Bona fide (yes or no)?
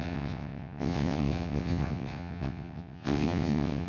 no